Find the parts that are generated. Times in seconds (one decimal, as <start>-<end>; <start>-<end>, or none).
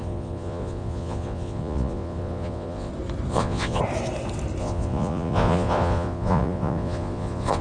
0.0-2.9; 3.3-3.8; 4.6-7.6